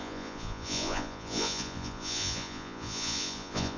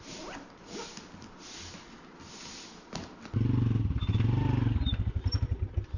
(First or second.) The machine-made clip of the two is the first